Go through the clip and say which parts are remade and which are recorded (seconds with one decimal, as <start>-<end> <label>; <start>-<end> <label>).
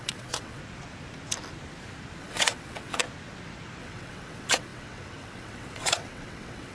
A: 0.0-0.6 remade; 0.6-2.2 recorded; 2.2-3.0 remade; 3.0-3.8 recorded; 3.8-6.7 remade